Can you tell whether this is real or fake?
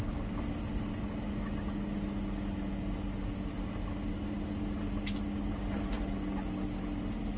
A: real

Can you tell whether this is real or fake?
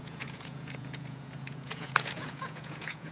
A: fake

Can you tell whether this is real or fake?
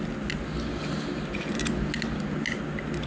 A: real